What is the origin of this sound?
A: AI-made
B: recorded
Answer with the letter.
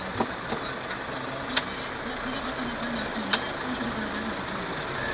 B